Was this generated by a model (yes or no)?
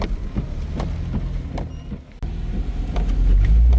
no